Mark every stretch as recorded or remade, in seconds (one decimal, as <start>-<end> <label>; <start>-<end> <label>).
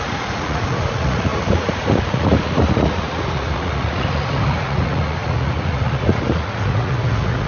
0.0-7.5 remade